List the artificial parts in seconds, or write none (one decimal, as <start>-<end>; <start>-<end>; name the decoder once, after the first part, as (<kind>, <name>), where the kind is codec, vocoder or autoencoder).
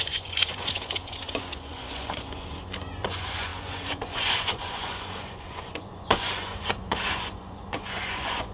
0.0-8.5 (vocoder, Vocos)